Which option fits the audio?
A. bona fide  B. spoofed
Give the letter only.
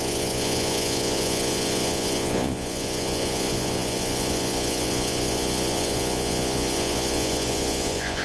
B